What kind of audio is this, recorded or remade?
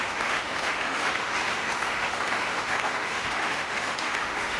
remade